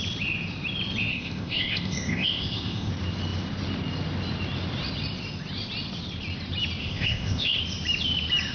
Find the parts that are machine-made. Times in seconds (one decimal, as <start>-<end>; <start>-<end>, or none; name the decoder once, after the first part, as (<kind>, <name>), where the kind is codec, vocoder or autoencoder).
1.1-2.9 (codec, ZipCodec); 6.8-7.6